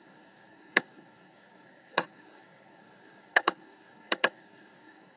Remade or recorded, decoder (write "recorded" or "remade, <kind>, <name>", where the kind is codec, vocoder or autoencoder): remade, codec, SNAC